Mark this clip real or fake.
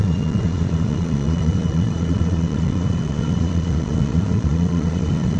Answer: fake